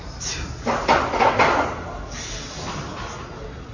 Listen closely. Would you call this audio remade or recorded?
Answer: recorded